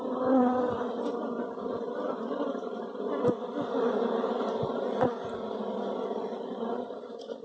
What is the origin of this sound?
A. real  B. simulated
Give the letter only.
A